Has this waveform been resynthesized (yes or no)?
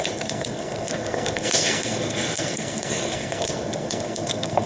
yes